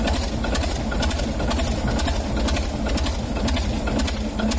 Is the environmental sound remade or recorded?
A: recorded